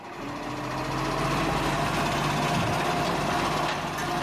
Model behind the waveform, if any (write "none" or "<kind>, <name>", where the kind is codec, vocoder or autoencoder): none